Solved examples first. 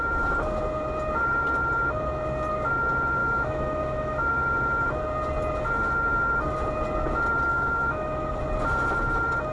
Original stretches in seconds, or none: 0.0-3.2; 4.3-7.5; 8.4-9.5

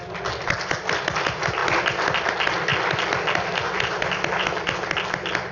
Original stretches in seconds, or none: 0.0-5.5

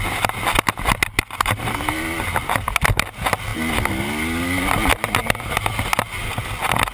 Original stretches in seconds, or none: 0.0-6.9

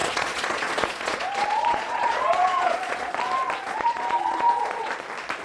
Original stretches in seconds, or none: 3.2-3.6; 4.9-5.4

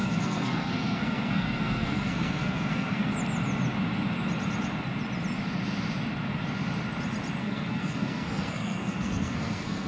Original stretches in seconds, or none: 3.1-7.4

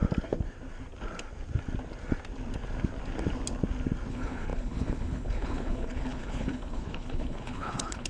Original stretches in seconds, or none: 0.0-4.1